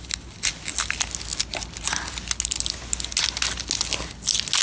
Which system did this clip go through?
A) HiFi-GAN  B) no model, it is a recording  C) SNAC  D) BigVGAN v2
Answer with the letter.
B